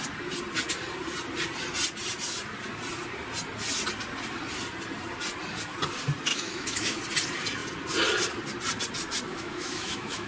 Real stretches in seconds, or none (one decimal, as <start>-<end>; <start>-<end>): 0.0-6.3; 7.0-9.3